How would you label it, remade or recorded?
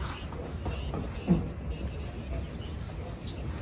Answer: recorded